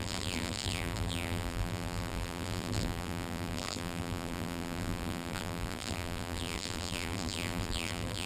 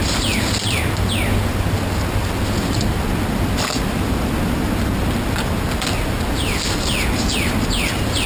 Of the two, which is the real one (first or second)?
second